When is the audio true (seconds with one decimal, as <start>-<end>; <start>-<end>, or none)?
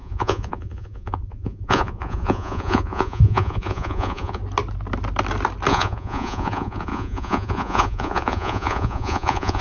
4.4-5.7